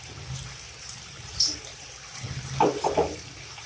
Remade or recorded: remade